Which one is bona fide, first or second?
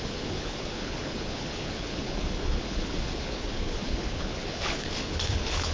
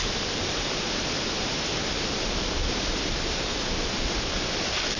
second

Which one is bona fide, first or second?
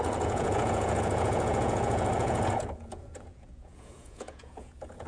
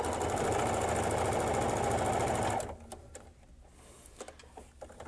second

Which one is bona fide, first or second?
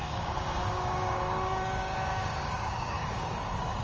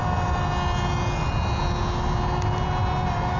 second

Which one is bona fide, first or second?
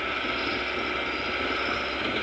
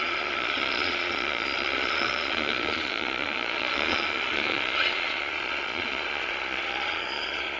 first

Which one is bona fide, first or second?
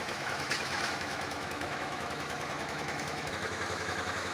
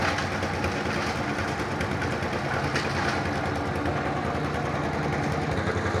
second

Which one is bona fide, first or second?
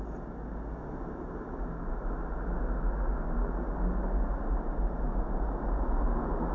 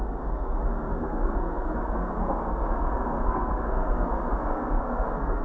first